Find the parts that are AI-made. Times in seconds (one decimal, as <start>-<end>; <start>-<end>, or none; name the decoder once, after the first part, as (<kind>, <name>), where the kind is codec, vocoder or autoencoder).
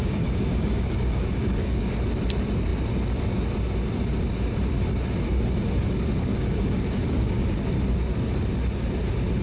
0.0-1.9 (codec, DAC); 6.3-7.7